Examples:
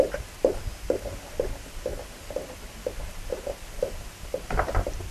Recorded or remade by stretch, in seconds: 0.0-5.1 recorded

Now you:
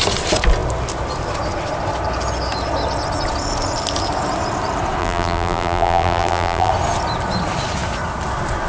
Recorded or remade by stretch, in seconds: 0.0-5.0 recorded; 5.0-6.7 remade; 6.7-8.7 recorded

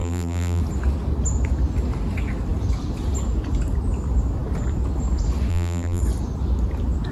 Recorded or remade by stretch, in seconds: 0.0-0.6 remade; 0.6-5.5 recorded; 5.5-6.0 remade; 6.0-7.1 recorded

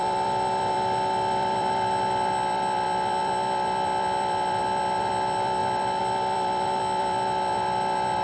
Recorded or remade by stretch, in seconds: 0.0-8.2 remade

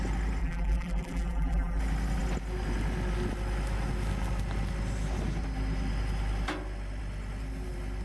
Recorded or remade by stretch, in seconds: 0.0-0.4 recorded; 0.4-1.8 remade; 1.8-8.0 recorded